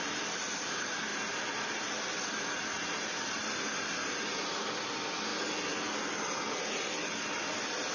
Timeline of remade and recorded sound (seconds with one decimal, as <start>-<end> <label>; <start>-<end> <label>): 0.0-7.9 recorded